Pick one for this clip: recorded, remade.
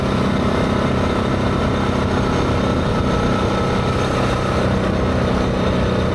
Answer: recorded